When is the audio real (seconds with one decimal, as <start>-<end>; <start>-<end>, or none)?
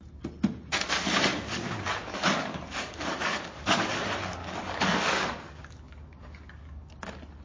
0.0-1.3; 4.0-4.4; 6.9-7.4